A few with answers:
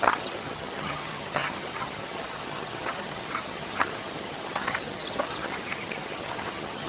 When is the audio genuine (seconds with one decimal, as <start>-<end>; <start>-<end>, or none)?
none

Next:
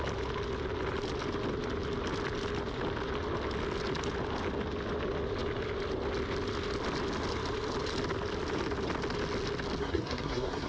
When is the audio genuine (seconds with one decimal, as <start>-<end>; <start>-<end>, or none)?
0.0-9.8

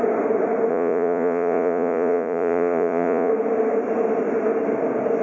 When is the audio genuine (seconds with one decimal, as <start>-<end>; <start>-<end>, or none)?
0.0-0.7; 3.3-5.2